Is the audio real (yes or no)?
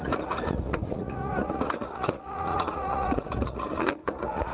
no